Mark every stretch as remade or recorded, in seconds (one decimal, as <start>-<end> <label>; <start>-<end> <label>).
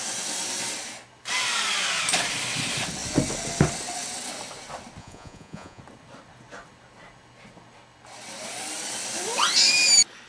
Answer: 0.0-5.0 recorded; 5.0-5.8 remade; 5.8-10.3 recorded